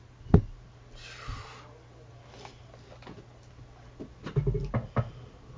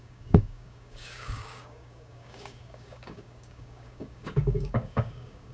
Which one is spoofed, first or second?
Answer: second